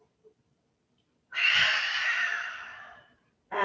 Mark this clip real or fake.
fake